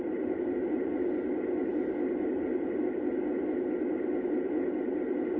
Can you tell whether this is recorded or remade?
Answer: recorded